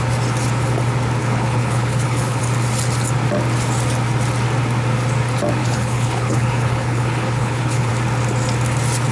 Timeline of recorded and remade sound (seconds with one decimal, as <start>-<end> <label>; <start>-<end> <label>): 0.0-1.2 recorded; 1.2-2.4 remade; 2.4-5.6 recorded; 5.6-7.9 remade; 7.9-9.1 recorded